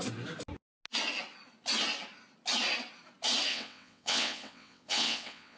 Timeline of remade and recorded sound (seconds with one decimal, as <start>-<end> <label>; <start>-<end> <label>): 0.0-3.5 recorded; 3.5-5.6 remade